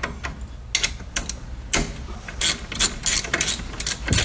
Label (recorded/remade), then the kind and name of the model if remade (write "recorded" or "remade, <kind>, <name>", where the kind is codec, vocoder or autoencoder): recorded